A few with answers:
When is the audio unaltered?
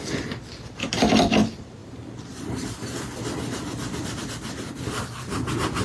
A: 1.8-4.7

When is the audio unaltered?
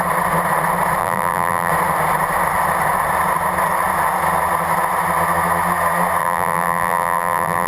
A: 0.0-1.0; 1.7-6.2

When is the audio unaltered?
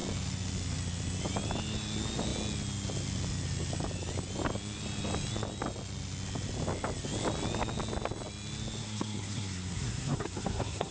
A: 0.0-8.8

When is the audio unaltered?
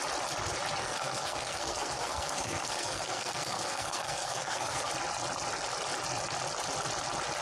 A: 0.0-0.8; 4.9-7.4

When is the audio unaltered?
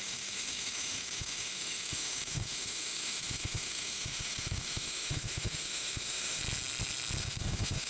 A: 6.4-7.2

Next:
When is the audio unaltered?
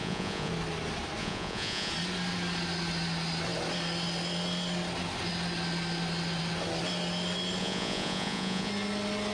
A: 0.5-1.2; 1.9-7.6; 8.7-9.3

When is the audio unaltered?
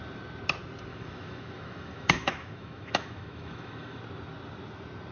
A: 0.0-0.9; 4.0-5.1